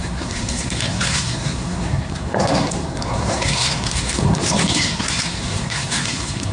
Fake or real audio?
fake